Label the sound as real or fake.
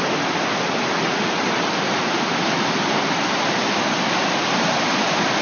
real